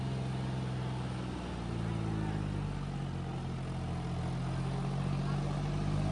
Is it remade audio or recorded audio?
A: recorded